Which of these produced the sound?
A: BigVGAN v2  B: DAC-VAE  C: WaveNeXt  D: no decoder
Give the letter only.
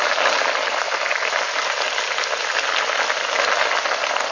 D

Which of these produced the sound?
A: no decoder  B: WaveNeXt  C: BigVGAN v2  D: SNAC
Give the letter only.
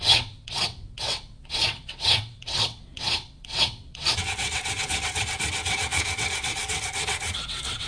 B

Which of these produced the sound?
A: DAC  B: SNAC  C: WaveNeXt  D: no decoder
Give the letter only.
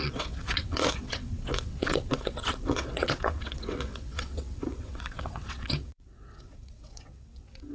C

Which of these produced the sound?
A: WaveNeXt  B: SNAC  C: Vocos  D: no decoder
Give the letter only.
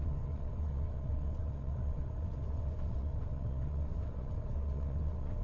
A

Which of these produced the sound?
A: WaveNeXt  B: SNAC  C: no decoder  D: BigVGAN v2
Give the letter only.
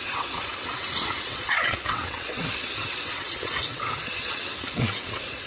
A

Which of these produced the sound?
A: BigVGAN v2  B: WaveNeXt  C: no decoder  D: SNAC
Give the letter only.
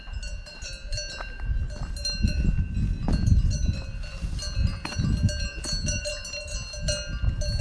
C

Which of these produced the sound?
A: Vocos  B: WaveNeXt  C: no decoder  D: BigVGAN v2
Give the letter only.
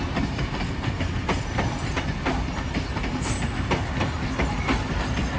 C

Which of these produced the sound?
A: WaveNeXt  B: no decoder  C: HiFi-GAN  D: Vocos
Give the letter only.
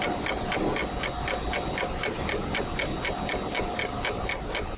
B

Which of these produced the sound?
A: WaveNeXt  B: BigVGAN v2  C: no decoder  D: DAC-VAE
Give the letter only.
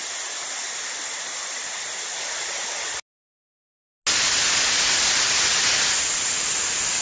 C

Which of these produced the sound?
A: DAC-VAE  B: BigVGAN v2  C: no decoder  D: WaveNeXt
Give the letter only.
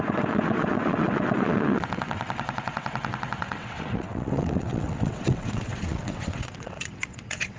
D